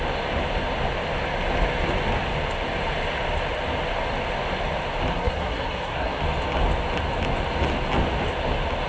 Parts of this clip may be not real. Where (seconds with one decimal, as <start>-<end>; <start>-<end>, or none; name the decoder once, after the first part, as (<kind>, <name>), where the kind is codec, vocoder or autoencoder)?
5.1-6.2 (codec, SNAC)